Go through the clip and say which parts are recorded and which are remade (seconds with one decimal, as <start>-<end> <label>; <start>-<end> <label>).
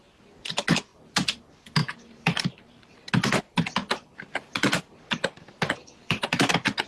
0.0-0.9 recorded; 0.9-1.4 remade; 1.4-1.8 recorded; 1.8-3.1 remade; 3.1-6.0 recorded; 6.0-6.5 remade; 6.5-6.9 recorded